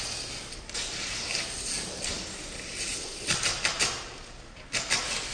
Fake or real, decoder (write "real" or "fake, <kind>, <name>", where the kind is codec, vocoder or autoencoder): real